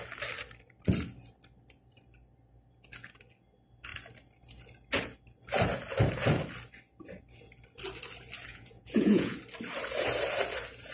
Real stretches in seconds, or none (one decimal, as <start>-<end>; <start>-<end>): 0.0-8.5; 9.4-10.9